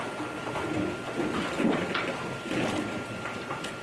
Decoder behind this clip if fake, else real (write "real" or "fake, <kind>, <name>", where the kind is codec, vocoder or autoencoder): real